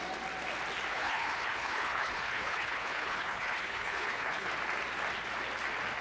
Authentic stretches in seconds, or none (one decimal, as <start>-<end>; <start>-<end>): 0.0-0.9; 4.5-6.0